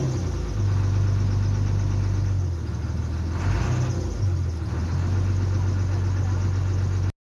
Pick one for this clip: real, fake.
real